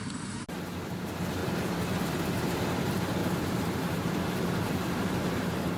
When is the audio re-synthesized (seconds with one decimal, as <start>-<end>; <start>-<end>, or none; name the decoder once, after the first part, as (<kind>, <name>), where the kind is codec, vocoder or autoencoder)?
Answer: 1.4-2.1 (vocoder, BigVGAN v2); 3.2-5.8